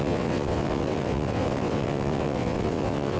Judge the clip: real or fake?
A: fake